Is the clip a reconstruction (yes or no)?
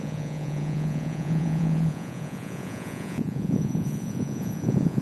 yes